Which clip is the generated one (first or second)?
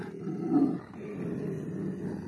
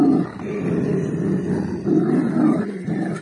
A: second